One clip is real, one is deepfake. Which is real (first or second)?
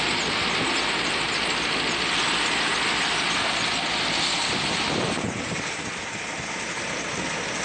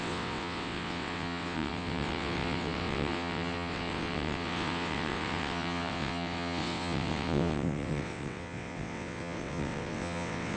first